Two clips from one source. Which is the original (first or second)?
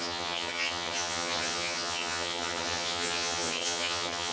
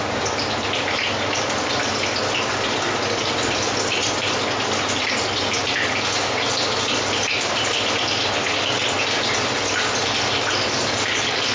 second